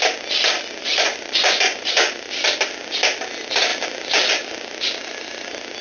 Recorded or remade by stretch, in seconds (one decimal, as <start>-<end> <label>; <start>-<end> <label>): 0.0-0.8 recorded; 0.8-2.3 remade; 2.3-5.8 recorded